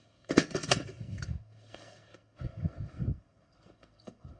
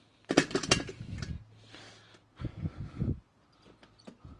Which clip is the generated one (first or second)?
first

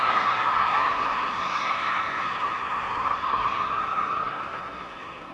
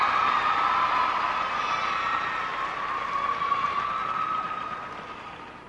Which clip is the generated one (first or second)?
first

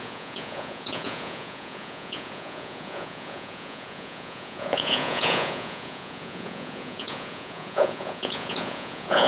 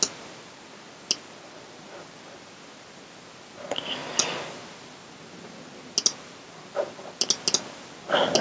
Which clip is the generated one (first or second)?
first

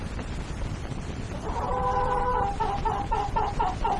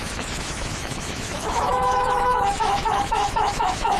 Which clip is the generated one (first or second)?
second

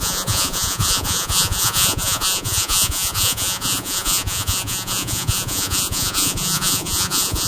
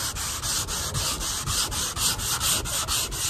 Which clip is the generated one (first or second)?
first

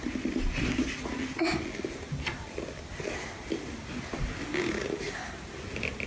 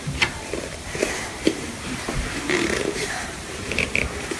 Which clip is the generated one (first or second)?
second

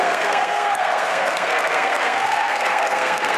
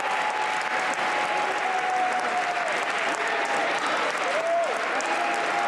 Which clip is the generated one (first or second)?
first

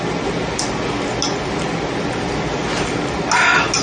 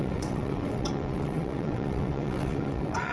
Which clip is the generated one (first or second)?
second